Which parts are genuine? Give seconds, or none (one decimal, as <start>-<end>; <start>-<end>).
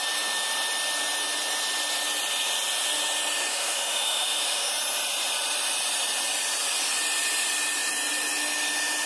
0.0-3.5; 4.7-9.1